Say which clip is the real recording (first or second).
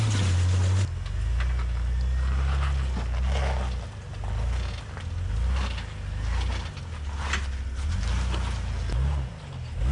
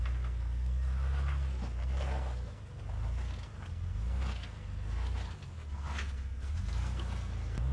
first